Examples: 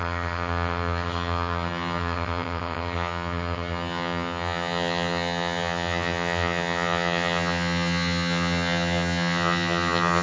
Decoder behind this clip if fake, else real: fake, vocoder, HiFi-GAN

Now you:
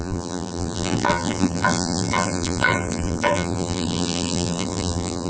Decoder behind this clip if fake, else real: fake, vocoder, BigVGAN v2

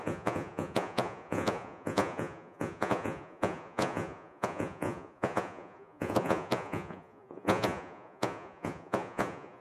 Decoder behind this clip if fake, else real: fake, vocoder, Vocos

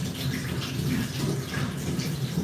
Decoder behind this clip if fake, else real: real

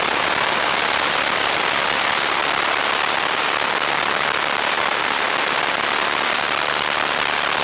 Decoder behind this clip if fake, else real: fake, vocoder, BigVGAN v2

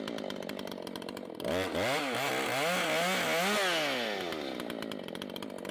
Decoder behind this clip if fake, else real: real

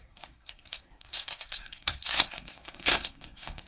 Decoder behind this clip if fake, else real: fake, codec, SNAC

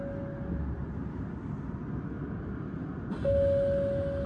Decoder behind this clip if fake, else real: real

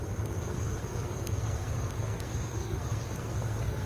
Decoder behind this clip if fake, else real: fake, codec, SNAC